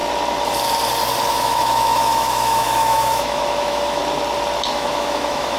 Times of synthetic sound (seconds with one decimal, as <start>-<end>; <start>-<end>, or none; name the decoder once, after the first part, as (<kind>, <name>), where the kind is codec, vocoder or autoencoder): 1.3-4.0 (autoencoder, DAC-VAE); 4.7-5.6